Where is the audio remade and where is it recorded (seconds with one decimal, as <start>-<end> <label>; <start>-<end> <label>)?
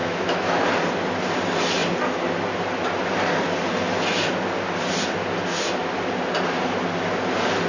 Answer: 0.0-0.6 remade; 0.6-7.7 recorded